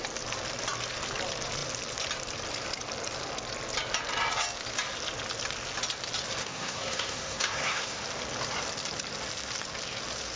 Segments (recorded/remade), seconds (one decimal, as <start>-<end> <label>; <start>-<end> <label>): 0.0-6.4 recorded; 6.4-8.0 remade; 8.0-10.4 recorded